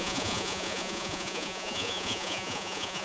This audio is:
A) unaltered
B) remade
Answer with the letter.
B